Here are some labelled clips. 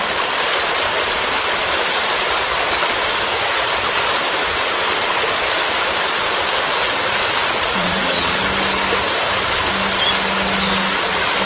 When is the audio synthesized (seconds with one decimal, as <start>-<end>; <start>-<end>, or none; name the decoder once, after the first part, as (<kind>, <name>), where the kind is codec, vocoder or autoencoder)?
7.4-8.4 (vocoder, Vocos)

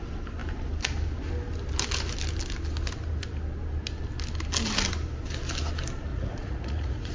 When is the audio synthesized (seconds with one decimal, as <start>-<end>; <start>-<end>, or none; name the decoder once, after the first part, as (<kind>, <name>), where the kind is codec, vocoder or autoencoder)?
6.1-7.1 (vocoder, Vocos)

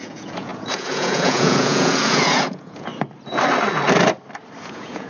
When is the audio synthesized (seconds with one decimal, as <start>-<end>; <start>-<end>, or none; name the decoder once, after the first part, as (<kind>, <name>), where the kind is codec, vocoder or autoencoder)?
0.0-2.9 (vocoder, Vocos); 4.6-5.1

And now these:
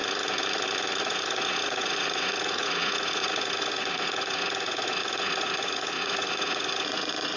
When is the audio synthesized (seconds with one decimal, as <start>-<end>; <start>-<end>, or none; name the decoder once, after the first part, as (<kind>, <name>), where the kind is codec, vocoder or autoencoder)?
1.0-7.4 (vocoder, Vocos)

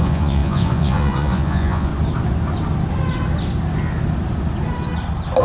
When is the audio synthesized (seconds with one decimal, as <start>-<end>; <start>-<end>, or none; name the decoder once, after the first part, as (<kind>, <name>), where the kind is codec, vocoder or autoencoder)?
0.0-1.9 (vocoder, Vocos)